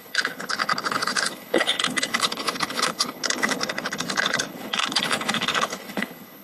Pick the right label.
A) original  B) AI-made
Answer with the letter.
B